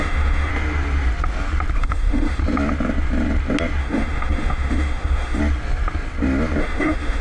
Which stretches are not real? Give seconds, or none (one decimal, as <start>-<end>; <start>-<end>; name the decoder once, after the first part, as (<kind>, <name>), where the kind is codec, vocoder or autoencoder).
0.0-0.5 (autoencoder, DAC-VAE); 1.8-2.4; 3.8-5.4; 6.6-7.2

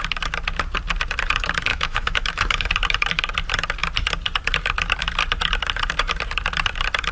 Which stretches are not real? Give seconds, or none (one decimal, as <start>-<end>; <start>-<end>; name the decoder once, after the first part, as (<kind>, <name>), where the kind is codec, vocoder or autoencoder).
1.7-2.7 (autoencoder, DAC-VAE)

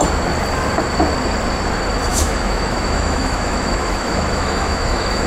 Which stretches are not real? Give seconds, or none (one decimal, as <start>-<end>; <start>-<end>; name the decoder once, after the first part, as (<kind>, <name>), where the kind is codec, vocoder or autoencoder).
2.1-5.3 (autoencoder, DAC-VAE)

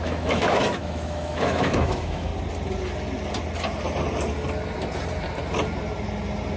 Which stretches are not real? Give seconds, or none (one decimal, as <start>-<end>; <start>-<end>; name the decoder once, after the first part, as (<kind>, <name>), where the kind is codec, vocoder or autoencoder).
0.0-2.3 (autoencoder, DAC-VAE)

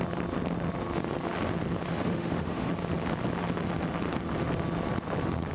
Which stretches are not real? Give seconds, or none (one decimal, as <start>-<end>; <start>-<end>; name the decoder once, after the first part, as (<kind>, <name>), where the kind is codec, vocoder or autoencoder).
1.9-2.7 (autoencoder, DAC-VAE)

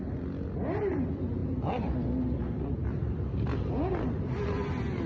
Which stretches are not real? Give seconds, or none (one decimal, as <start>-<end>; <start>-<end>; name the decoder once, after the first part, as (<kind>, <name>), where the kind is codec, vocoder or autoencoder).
none

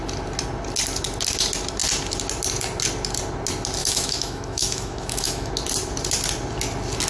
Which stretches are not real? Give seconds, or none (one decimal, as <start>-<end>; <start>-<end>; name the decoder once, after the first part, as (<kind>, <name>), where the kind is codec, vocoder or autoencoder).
3.8-5.5 (autoencoder, DAC-VAE)

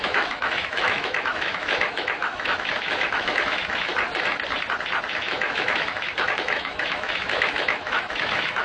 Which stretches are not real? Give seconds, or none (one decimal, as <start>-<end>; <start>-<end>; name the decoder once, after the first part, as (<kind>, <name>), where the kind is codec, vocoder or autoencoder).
0.0-3.9 (autoencoder, DAC-VAE); 5.1-8.6